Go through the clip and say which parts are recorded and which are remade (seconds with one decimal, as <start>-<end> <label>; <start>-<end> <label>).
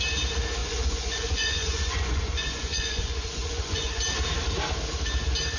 0.0-0.6 recorded; 0.6-4.0 remade; 4.0-5.6 recorded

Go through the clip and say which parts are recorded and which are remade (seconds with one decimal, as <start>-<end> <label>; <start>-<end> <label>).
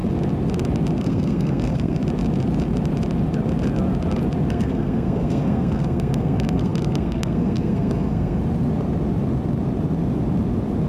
0.0-1.0 recorded; 1.0-2.0 remade; 2.0-4.5 recorded; 4.5-8.4 remade; 8.4-10.9 recorded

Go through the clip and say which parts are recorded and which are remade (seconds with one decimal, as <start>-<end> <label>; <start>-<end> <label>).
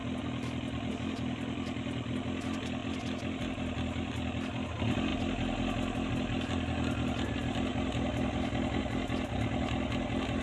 0.0-10.4 recorded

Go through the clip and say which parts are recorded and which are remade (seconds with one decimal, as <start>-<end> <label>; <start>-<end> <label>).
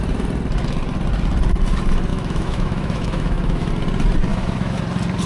0.0-2.1 recorded; 2.1-3.7 remade; 3.7-4.3 recorded; 4.3-4.8 remade; 4.8-5.3 recorded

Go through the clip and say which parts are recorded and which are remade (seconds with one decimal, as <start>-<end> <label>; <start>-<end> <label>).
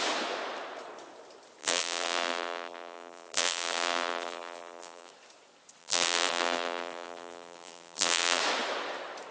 0.0-1.6 recorded; 1.6-5.1 remade; 5.1-5.8 recorded; 5.8-8.4 remade; 8.4-9.3 recorded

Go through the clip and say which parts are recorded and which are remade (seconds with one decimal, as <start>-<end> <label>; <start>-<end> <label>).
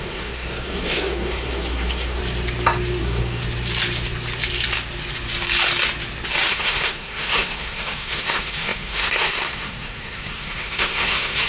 0.0-2.2 remade; 2.2-3.0 recorded; 3.0-3.4 remade; 3.4-6.5 recorded; 6.5-11.5 remade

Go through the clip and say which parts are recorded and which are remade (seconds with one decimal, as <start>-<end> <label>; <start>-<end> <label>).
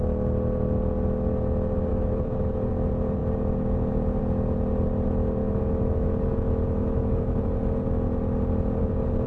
0.0-1.9 recorded; 1.9-2.7 remade; 2.7-5.4 recorded; 5.4-7.4 remade; 7.4-9.3 recorded